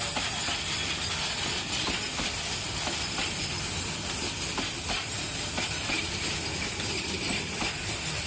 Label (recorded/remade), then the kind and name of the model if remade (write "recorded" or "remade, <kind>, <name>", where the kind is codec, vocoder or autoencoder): recorded